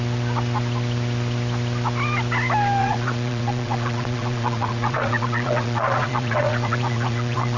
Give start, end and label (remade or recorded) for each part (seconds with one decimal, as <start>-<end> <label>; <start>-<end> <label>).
0.0-2.8 recorded; 2.8-7.6 remade